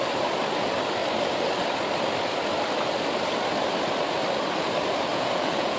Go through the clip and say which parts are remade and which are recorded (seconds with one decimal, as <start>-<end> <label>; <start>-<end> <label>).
0.0-5.1 recorded; 5.1-5.8 remade